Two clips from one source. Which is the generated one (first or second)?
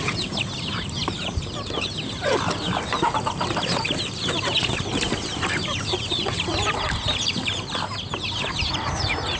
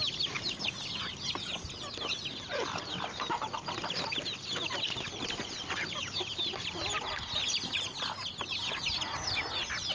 first